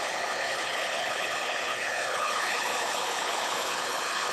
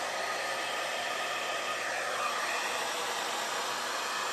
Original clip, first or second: second